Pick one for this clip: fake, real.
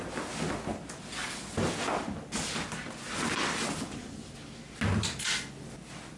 real